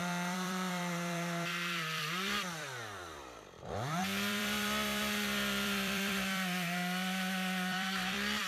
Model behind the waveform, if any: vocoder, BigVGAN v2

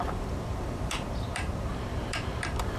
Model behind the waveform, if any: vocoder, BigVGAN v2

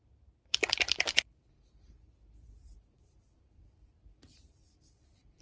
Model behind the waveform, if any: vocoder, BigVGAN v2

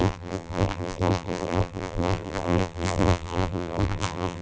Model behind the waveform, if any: vocoder, BigVGAN v2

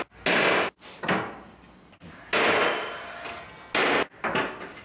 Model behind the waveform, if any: none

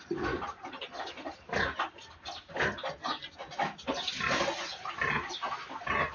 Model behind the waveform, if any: none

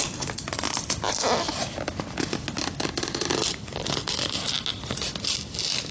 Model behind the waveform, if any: none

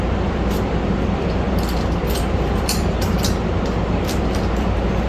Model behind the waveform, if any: vocoder, BigVGAN v2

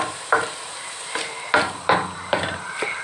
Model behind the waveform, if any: vocoder, BigVGAN v2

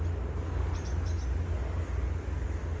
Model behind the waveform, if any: none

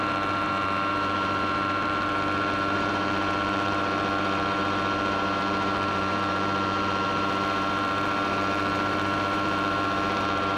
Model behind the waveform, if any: vocoder, BigVGAN v2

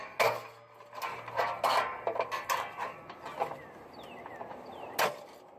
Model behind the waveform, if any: none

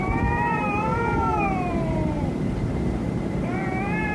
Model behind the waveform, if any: vocoder, BigVGAN v2